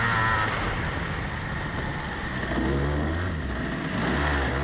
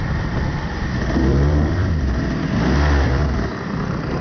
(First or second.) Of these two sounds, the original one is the first